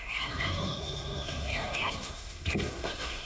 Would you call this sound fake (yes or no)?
yes